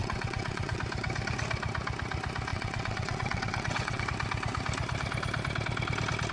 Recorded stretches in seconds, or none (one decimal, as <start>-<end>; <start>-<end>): 0.8-2.5; 4.0-6.3